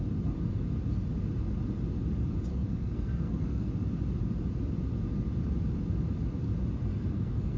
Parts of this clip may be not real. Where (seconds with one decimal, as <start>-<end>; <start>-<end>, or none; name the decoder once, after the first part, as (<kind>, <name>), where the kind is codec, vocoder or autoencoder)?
2.5-3.7 (codec, SNAC); 6.9-7.6